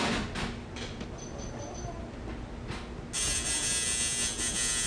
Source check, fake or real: real